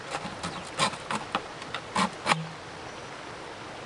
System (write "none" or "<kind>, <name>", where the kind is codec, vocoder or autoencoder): none